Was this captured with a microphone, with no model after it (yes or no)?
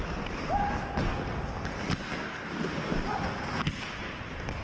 yes